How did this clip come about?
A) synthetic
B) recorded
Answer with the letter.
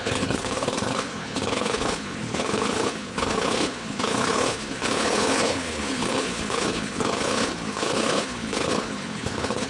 A